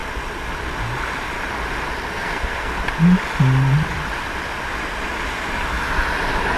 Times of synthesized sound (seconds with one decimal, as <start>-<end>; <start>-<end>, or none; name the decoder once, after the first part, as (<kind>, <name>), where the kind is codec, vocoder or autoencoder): 2.1-2.8 (codec, SNAC)